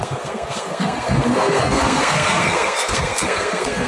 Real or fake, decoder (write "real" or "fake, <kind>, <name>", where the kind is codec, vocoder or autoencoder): fake, codec, SNAC